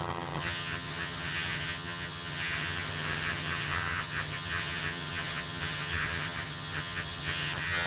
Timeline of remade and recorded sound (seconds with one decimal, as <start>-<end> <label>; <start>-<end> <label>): 0.0-7.9 remade